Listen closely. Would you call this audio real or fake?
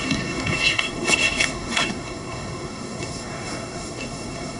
fake